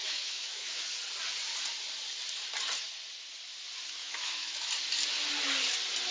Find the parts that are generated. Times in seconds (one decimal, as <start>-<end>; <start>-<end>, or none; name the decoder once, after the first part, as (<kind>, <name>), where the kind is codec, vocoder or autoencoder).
0.0-0.8 (autoencoder, DAC-VAE); 4.0-4.7